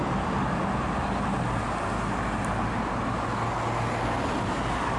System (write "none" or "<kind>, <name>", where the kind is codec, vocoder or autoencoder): none